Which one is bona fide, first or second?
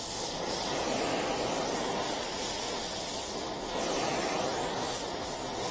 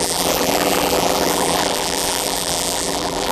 first